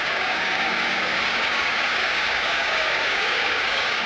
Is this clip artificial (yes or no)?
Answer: yes